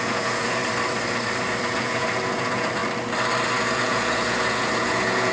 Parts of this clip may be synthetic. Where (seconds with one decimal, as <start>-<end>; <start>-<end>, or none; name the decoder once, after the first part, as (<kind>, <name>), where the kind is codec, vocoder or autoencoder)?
0.0-0.6 (vocoder, Vocos); 1.6-2.8; 3.6-5.3